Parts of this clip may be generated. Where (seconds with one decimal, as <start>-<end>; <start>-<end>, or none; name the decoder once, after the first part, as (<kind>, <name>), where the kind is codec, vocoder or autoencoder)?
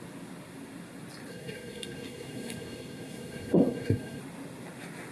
1.3-4.2 (codec, SNAC)